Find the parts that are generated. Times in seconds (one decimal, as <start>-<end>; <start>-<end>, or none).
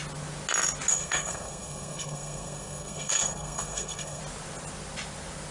0.9-4.2